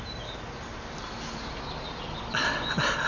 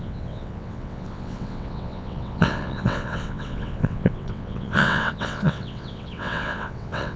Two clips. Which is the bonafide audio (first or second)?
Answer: first